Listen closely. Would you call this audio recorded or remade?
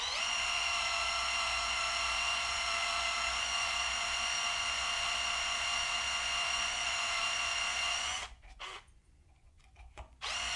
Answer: remade